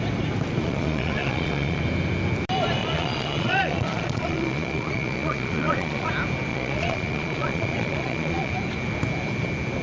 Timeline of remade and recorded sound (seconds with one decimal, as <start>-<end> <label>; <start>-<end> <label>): 0.0-0.6 recorded; 0.6-1.8 remade; 1.8-2.8 recorded; 2.8-6.1 remade; 6.1-6.5 recorded; 6.5-8.5 remade; 8.5-9.8 recorded